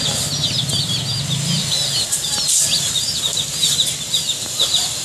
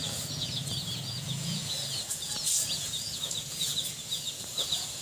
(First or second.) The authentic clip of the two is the first